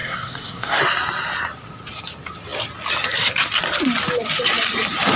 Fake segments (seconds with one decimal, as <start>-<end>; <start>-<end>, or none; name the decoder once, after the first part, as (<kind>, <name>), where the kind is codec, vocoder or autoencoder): 0.0-0.8 (codec, SNAC)